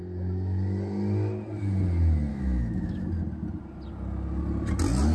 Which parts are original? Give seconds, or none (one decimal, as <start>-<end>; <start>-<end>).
0.0-2.3; 3.1-5.1